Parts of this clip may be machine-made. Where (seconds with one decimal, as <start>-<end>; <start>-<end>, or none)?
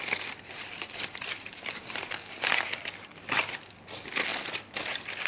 none